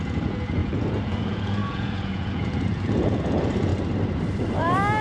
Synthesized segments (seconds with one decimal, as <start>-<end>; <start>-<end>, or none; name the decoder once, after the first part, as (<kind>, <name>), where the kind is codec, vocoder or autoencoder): 0.0-3.7 (vocoder, Vocos)